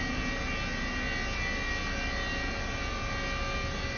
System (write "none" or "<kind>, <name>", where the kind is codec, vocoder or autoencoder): none